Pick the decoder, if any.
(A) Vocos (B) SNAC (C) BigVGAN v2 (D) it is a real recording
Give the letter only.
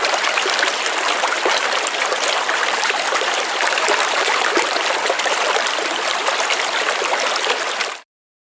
C